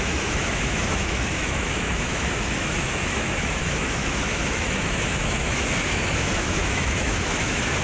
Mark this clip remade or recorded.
remade